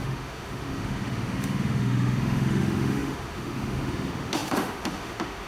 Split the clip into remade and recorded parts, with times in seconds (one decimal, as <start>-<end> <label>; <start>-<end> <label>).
0.0-5.5 remade